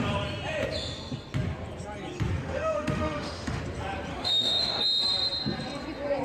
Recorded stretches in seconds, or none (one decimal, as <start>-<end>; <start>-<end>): 0.0-2.4; 3.6-4.1; 4.8-6.2